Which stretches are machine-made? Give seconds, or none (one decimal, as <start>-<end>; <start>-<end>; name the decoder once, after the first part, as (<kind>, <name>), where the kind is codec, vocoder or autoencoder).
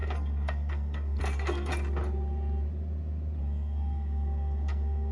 0.0-1.7 (codec, SNAC); 3.4-5.1